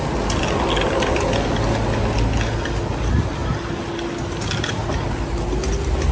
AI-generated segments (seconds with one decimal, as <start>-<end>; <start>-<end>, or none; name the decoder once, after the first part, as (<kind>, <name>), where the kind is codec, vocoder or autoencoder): none